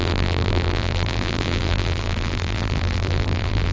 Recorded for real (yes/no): no